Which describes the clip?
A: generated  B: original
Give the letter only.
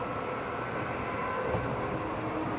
B